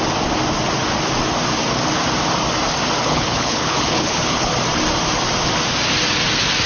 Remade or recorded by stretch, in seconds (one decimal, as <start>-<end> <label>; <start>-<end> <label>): 0.0-3.0 recorded; 3.0-4.5 remade; 4.5-6.7 recorded